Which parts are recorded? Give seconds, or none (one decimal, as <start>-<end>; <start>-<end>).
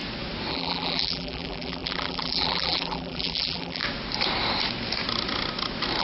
0.0-0.5; 3.8-6.0